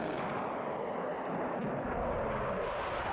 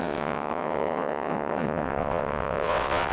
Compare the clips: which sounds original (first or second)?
first